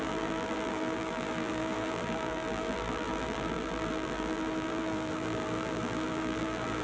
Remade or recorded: remade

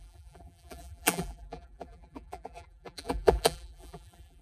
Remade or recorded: remade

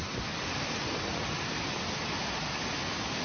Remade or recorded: recorded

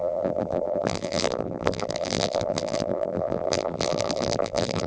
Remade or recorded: remade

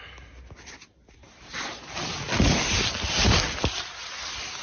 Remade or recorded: recorded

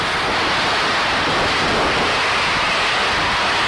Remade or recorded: recorded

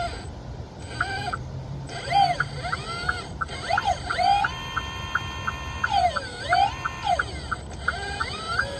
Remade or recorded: remade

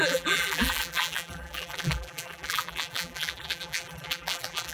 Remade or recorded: remade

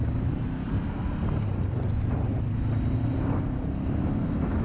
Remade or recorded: recorded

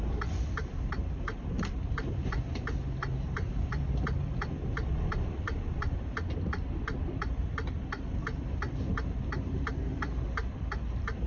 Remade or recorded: remade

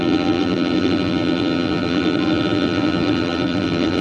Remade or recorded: remade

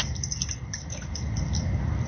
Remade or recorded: recorded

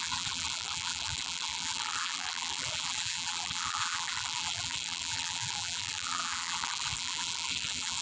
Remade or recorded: remade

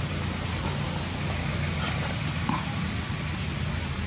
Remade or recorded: recorded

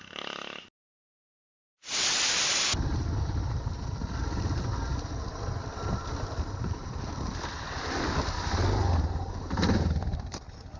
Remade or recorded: recorded